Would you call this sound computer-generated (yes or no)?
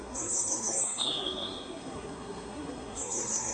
yes